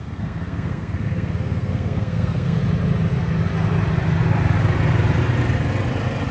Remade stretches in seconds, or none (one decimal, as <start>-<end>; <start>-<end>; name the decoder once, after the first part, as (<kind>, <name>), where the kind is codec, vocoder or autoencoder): 0.0-2.6 (codec, SNAC)